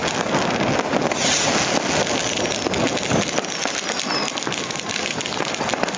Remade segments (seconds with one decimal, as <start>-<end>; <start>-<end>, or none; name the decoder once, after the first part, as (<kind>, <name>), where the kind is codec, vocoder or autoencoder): none